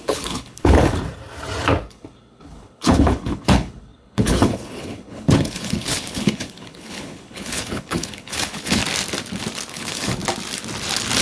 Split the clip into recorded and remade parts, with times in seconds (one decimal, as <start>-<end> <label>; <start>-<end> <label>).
0.0-0.9 remade; 0.9-1.9 recorded; 1.9-8.8 remade; 8.8-9.7 recorded; 9.7-10.2 remade; 10.2-11.2 recorded